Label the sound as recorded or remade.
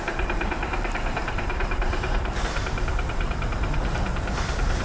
remade